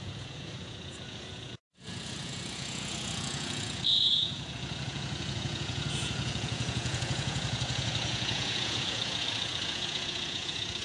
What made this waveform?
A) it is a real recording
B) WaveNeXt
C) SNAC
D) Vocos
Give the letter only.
D